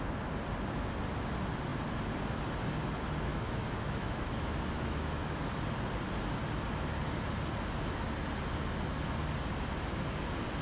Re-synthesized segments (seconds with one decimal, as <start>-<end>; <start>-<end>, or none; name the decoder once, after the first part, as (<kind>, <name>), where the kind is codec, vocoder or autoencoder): 3.3-5.4 (autoencoder, DAC-VAE)